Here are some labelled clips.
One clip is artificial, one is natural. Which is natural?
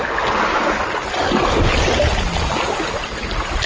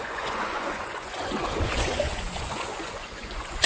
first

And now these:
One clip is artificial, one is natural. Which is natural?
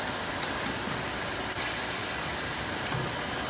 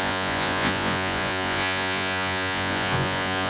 first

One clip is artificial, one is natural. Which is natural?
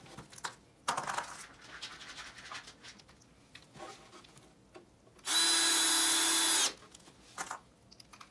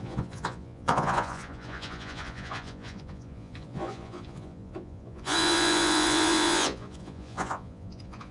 first